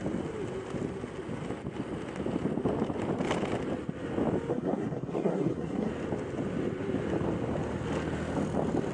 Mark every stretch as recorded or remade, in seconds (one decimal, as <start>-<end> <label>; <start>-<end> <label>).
0.0-4.5 recorded; 4.5-5.9 remade; 5.9-8.9 recorded